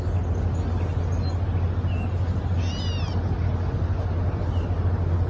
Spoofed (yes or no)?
no